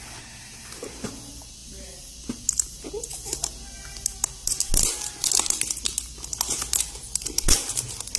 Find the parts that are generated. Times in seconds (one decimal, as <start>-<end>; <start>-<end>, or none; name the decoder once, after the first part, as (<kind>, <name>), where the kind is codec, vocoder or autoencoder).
none